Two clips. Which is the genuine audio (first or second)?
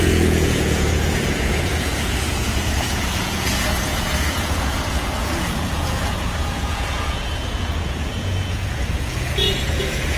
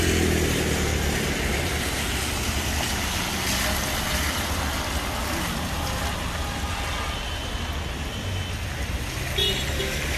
second